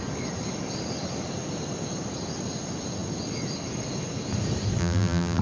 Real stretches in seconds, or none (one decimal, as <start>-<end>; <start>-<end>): 0.0-4.8